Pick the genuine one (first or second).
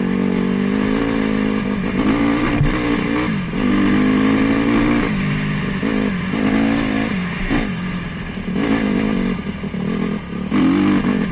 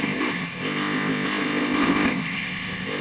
first